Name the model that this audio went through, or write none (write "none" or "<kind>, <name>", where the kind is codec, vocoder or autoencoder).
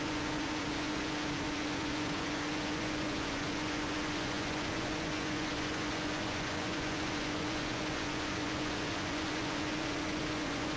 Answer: vocoder, Vocos